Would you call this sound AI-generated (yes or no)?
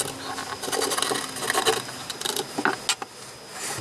no